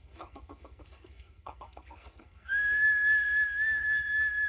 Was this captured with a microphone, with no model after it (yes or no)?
no